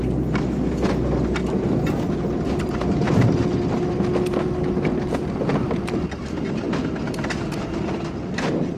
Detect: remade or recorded recorded